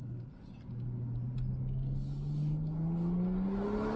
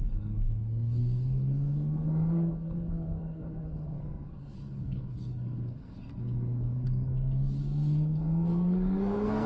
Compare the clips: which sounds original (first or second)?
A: first